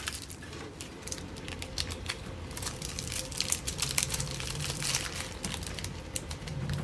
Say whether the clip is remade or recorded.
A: remade